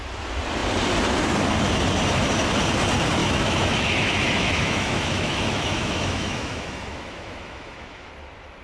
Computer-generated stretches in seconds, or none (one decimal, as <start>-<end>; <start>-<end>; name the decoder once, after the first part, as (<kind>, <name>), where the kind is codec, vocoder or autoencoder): 3.2-8.1 (autoencoder, DAC-VAE)